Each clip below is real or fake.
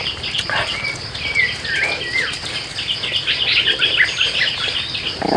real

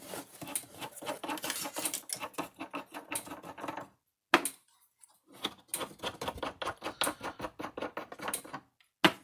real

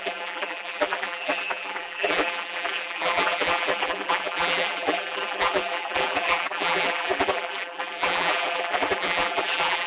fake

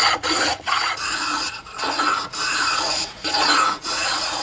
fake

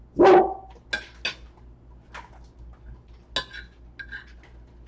real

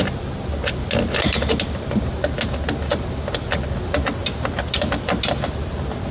real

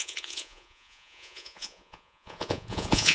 fake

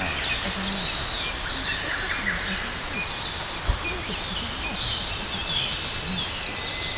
real